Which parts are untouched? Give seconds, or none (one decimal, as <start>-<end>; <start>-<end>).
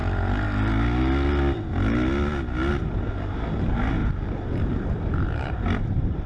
0.0-2.7